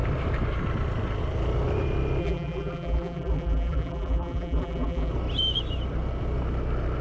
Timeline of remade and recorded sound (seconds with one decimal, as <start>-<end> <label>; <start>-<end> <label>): 0.0-2.2 recorded; 2.2-5.1 remade; 5.1-7.0 recorded